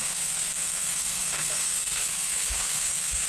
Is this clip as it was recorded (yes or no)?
no